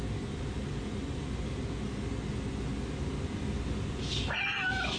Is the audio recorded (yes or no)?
yes